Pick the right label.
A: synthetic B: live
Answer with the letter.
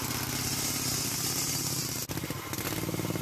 B